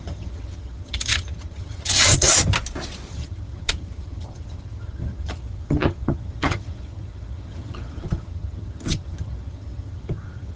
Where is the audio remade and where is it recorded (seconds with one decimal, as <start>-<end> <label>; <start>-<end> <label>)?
0.0-2.3 remade; 2.3-3.1 recorded; 3.1-10.6 remade